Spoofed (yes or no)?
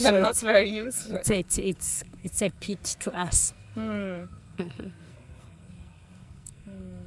yes